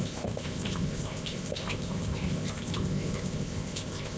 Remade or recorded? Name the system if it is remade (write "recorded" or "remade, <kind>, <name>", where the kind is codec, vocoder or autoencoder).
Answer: remade, codec, ZipCodec